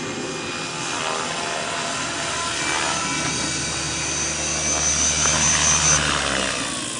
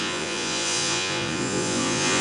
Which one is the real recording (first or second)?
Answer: first